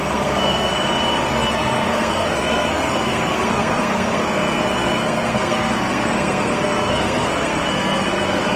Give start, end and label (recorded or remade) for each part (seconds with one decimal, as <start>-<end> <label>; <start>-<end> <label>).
0.0-0.7 remade; 0.7-1.3 recorded; 1.3-8.6 remade